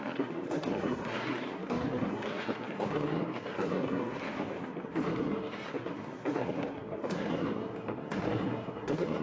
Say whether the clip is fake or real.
fake